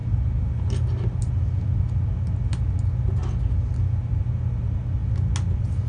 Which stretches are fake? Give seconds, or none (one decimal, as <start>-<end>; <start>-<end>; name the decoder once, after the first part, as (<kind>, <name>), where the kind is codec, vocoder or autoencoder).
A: none